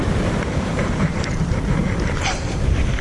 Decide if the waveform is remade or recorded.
remade